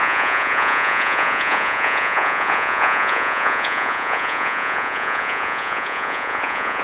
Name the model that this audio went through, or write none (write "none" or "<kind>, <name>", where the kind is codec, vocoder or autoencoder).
vocoder, Vocos